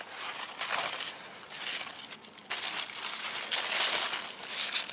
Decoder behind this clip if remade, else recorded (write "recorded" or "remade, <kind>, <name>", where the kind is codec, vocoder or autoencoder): recorded